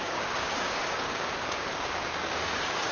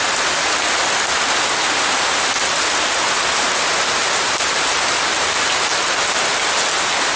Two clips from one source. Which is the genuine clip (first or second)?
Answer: second